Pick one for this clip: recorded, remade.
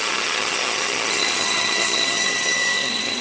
remade